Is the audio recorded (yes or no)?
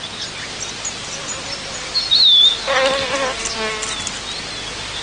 yes